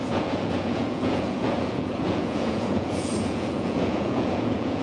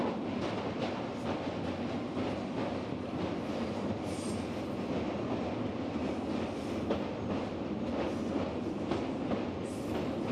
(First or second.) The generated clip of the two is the first